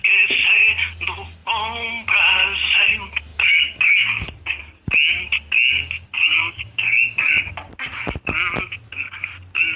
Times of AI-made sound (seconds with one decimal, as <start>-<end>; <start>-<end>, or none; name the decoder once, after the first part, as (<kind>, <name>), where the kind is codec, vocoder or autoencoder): 3.3-4.6 (codec, DAC); 5.8-7.4